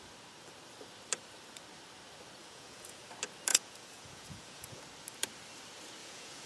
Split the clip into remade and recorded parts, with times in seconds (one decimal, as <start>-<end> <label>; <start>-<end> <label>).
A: 0.0-2.4 recorded; 2.4-3.1 remade; 3.1-3.5 recorded; 3.5-4.8 remade; 4.8-6.0 recorded; 6.0-6.5 remade